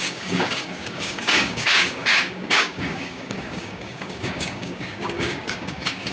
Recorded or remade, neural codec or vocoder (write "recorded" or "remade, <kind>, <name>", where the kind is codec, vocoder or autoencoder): remade, codec, DAC